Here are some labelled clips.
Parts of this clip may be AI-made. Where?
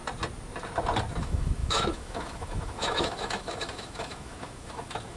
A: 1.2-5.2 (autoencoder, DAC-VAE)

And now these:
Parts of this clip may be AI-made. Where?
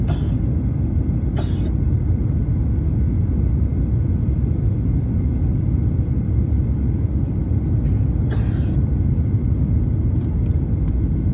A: none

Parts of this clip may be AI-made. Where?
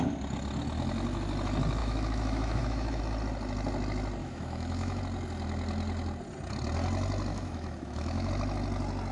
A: 1.8-3.0 (autoencoder, DAC-VAE); 4.2-5.0; 7.3-8.3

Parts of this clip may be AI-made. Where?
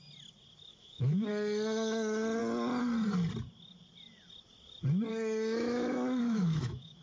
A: 0.7-1.3 (autoencoder, DAC-VAE); 5.1-7.0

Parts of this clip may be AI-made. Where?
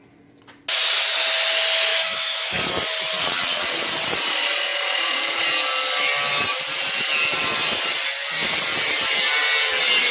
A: 1.9-2.7 (autoencoder, DAC-VAE)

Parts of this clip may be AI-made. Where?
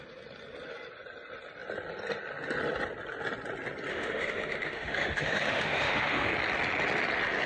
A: 3.9-6.3 (autoencoder, DAC-VAE)